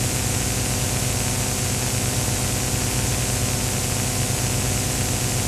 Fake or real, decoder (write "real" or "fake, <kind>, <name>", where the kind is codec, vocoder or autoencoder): real